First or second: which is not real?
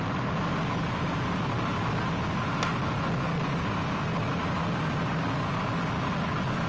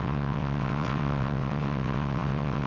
second